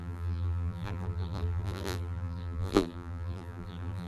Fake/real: fake